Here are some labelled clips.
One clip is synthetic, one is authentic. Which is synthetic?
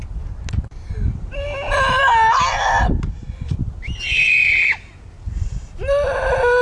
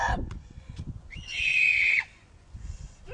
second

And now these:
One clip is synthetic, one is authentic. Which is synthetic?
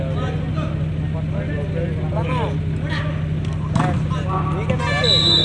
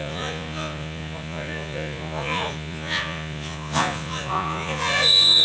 second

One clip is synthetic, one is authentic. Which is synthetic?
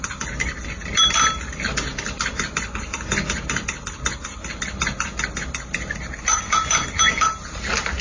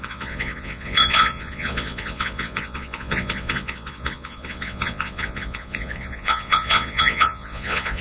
second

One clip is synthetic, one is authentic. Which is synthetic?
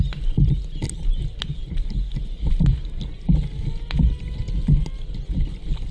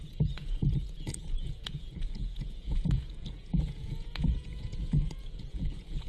second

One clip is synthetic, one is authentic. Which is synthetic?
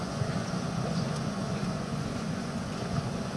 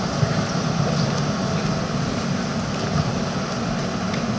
first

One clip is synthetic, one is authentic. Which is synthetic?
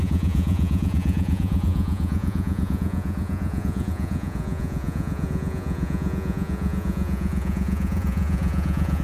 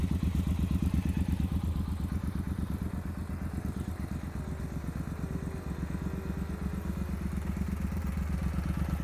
first